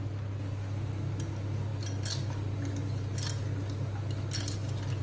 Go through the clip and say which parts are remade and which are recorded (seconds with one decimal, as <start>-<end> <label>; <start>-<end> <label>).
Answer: 0.0-5.0 recorded